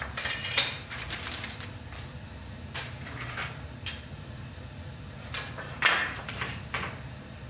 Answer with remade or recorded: remade